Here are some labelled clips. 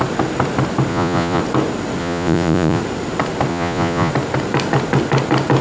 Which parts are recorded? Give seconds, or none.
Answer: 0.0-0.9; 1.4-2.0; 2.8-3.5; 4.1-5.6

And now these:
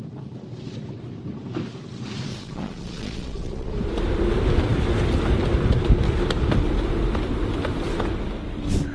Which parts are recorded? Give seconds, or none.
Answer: 0.0-2.3; 3.7-8.9

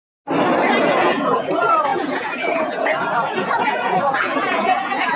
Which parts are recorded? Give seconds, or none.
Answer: 0.0-0.8

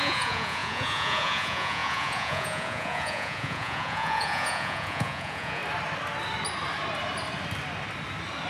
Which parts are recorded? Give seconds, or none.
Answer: 5.6-8.5

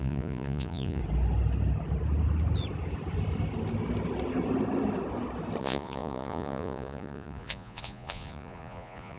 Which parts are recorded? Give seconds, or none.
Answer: 1.0-5.6

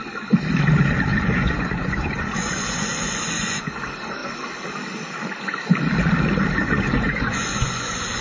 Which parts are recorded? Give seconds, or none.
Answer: 0.0-1.1; 3.6-6.6

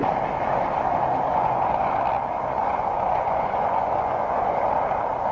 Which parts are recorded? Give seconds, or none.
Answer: 0.0-1.3; 2.0-2.6; 4.6-5.3

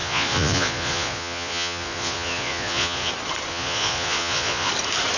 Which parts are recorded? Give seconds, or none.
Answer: 3.1-3.5; 4.7-5.2